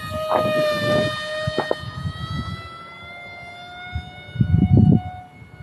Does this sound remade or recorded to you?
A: recorded